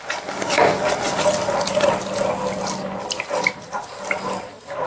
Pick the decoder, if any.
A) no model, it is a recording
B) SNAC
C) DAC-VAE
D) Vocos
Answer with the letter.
A